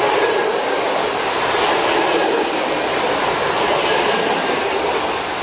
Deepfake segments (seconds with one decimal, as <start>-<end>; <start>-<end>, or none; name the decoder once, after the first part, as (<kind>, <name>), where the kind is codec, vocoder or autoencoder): none